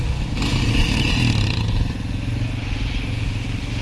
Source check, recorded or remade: recorded